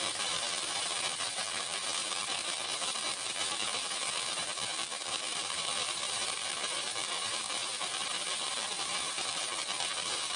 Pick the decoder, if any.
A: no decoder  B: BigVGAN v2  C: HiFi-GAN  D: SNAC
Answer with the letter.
B